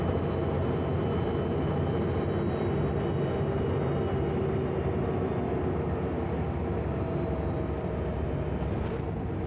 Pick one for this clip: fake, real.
real